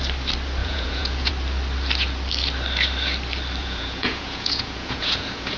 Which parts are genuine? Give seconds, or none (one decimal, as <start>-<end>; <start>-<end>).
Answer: 0.0-0.6; 1.3-3.6